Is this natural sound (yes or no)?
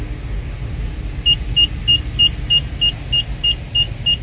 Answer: yes